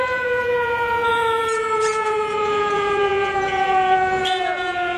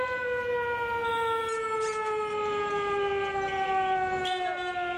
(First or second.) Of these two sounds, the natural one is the second